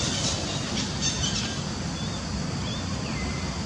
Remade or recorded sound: recorded